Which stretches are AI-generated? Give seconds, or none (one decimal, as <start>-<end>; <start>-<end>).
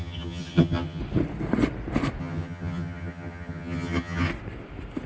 0.0-1.0; 2.2-4.3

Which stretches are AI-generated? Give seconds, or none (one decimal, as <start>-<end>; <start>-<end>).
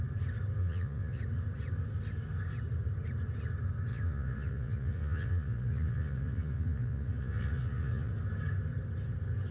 0.6-1.2; 3.9-8.1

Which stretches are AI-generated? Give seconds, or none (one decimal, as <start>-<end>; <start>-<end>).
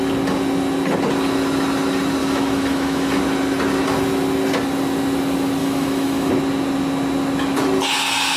2.2-3.2; 5.6-6.3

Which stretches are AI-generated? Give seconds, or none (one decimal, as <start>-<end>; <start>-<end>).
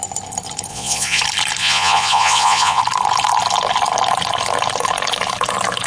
0.7-1.2; 1.6-2.8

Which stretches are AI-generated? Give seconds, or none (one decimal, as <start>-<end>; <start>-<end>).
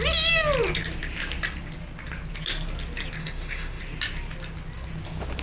3.2-3.8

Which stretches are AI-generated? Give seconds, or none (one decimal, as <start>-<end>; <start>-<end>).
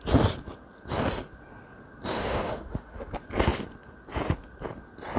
2.1-3.1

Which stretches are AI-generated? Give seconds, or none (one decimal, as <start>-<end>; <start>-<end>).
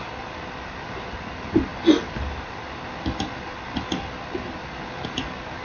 none